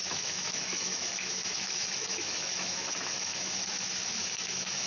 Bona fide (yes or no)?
no